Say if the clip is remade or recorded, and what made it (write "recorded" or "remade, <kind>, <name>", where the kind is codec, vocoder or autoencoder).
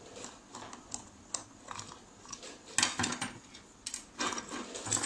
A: recorded